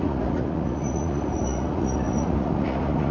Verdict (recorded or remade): remade